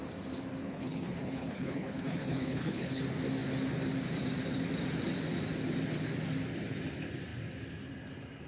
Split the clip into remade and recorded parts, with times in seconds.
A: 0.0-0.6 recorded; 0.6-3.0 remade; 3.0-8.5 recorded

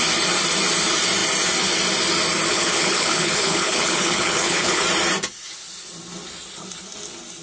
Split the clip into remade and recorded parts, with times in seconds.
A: 0.0-2.5 recorded; 2.5-4.8 remade; 4.8-7.4 recorded